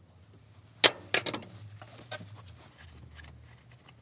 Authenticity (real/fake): real